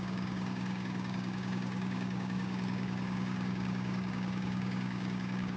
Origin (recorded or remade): remade